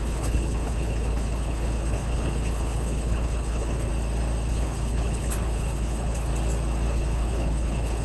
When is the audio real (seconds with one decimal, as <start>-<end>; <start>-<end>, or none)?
3.9-4.5; 6.3-6.9